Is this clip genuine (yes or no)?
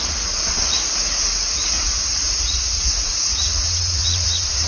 no